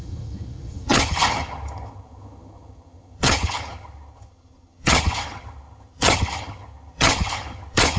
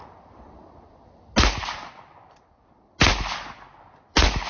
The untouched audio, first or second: second